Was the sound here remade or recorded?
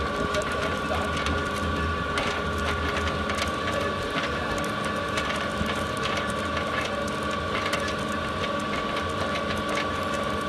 recorded